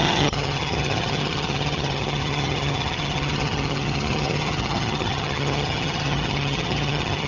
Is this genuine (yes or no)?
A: no